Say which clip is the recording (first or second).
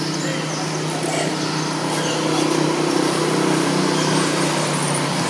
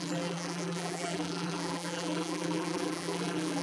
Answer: first